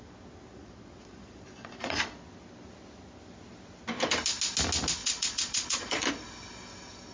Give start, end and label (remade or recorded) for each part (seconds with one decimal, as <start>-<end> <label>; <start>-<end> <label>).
0.0-0.5 recorded; 0.5-2.2 remade; 2.2-5.0 recorded; 5.0-6.1 remade; 6.1-7.1 recorded